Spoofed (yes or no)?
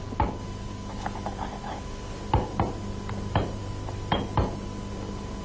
no